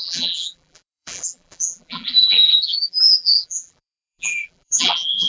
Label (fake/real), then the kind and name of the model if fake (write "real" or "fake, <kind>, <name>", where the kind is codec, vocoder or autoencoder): fake, vocoder, BigVGAN v2